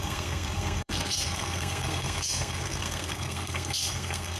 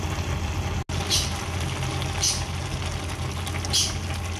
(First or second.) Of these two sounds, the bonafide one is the second